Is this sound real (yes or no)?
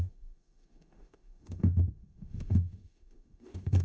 no